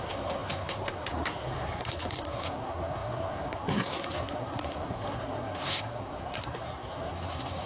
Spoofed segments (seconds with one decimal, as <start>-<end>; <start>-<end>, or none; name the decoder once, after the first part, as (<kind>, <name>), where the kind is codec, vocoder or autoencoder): 0.0-7.7 (codec, SNAC)